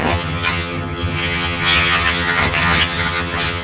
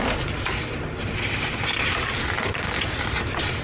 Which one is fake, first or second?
first